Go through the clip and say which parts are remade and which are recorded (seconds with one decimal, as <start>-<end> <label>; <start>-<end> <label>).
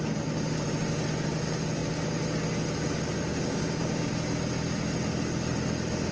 0.0-3.3 recorded; 3.3-4.1 remade; 4.1-6.1 recorded